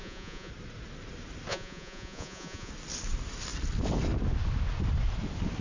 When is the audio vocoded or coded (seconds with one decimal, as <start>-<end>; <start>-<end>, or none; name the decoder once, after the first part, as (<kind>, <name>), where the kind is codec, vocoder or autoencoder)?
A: 0.0-0.5 (vocoder, Vocos); 1.5-2.7